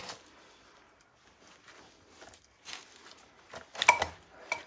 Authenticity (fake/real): real